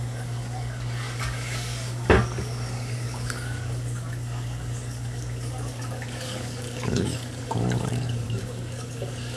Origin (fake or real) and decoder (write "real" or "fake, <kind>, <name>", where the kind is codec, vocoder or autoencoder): fake, codec, DAC